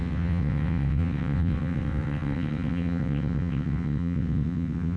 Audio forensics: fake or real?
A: fake